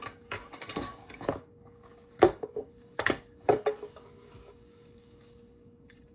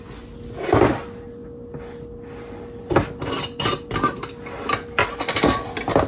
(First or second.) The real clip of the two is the second